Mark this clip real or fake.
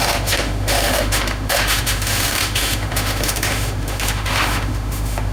fake